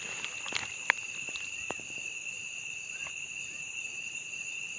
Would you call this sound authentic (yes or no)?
yes